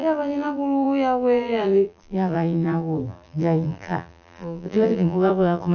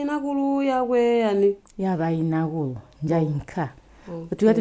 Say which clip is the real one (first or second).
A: second